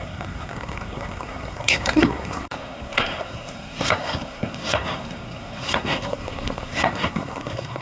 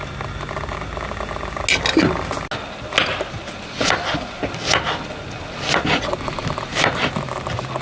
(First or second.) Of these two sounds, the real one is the second